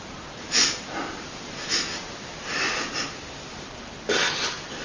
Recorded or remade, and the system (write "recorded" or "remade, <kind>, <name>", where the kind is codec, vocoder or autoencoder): recorded